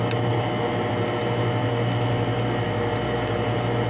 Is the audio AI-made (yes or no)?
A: no